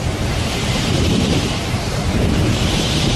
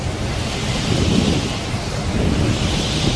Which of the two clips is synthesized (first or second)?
first